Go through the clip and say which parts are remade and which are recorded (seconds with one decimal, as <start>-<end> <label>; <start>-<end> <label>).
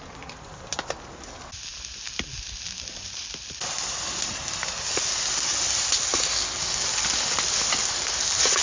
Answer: 0.0-8.6 recorded